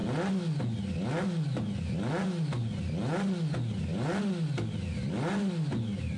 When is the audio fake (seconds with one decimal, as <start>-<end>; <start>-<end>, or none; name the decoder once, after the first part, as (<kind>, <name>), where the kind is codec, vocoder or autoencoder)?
none